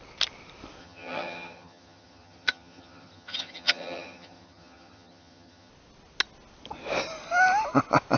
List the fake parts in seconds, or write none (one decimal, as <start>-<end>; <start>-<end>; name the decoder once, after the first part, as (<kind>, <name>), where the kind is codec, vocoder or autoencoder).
0.8-5.7 (vocoder, HiFi-GAN)